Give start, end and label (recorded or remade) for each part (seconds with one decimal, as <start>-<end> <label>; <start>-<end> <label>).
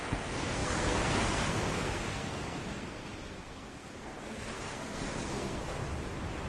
0.0-5.8 remade; 5.8-6.5 recorded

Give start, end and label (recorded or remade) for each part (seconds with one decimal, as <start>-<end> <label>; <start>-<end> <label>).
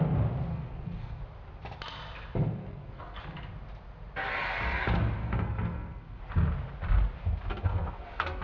0.0-0.5 recorded; 0.5-1.2 remade; 1.2-2.6 recorded; 2.6-3.2 remade; 3.2-5.2 recorded; 5.2-6.2 remade; 6.2-7.5 recorded; 7.5-8.4 remade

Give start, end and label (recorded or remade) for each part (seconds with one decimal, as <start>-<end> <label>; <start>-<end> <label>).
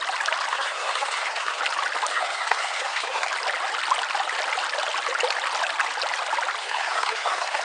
0.0-0.5 recorded; 0.5-1.6 remade; 1.6-2.1 recorded; 2.1-3.3 remade; 3.3-6.6 recorded; 6.6-7.6 remade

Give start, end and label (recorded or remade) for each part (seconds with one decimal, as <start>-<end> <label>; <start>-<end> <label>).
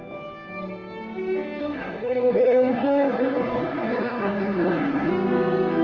0.0-1.6 recorded; 1.6-5.1 remade; 5.1-5.8 recorded